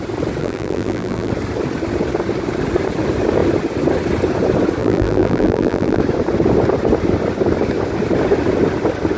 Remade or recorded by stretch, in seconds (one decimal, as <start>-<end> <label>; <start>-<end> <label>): 0.0-0.4 recorded; 0.4-1.3 remade; 1.3-4.8 recorded; 4.8-6.0 remade; 6.0-9.2 recorded